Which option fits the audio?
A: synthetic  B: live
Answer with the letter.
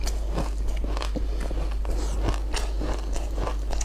B